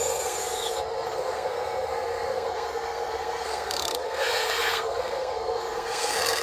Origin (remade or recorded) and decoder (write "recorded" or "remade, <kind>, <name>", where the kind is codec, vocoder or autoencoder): remade, codec, SNAC